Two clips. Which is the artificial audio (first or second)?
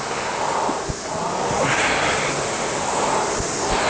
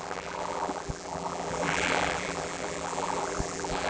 second